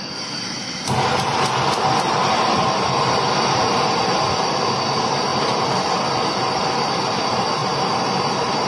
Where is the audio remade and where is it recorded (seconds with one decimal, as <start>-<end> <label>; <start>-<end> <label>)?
0.0-8.7 recorded